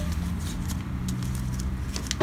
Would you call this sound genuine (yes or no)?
yes